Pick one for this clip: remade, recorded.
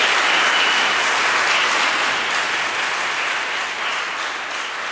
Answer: recorded